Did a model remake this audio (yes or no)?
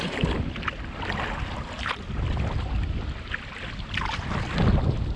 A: no